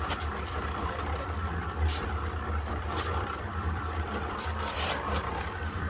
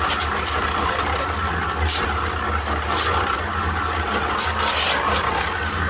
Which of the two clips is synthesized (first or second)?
first